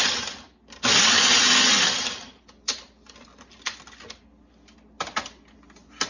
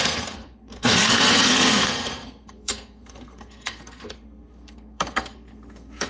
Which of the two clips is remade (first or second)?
second